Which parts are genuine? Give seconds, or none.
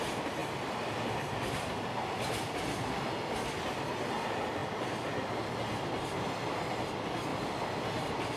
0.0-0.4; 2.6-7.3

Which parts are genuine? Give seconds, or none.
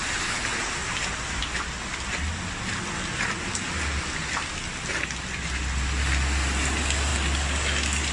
0.0-8.1